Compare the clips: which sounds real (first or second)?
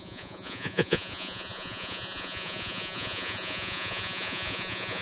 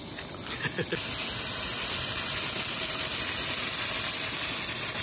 second